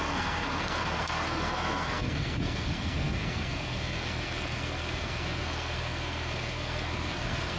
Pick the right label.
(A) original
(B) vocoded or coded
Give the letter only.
B